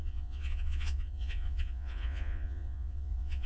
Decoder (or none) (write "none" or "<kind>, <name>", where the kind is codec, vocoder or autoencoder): vocoder, Vocos